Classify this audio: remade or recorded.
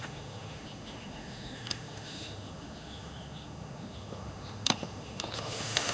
remade